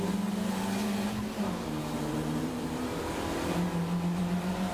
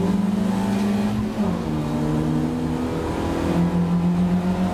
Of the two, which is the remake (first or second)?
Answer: first